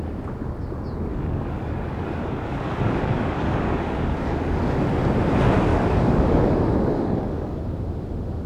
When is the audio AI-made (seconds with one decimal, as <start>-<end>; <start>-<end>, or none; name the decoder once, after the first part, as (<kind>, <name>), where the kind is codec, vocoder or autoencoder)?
1.1-4.6 (codec, DAC); 5.7-7.6